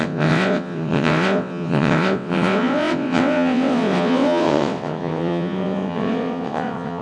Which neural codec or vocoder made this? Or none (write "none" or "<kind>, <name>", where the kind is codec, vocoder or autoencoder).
vocoder, WaveNeXt